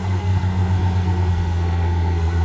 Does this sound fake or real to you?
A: fake